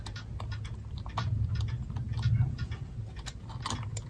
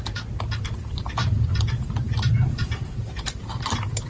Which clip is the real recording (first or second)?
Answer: first